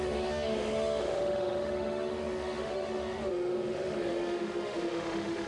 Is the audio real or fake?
fake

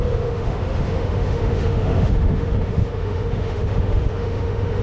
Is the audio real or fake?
fake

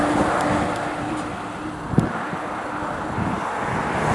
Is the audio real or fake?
real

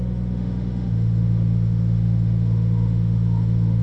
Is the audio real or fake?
fake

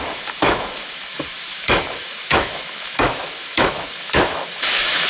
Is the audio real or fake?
fake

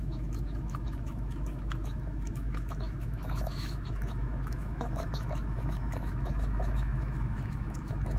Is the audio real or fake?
fake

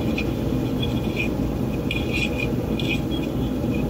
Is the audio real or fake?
real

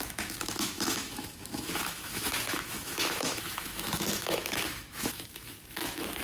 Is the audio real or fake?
fake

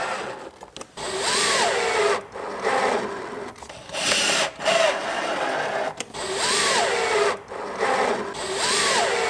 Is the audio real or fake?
real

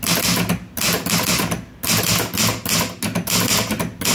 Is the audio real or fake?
real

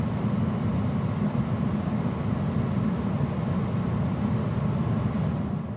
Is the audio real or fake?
real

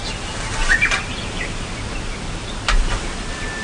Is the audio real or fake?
real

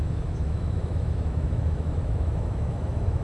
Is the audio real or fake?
fake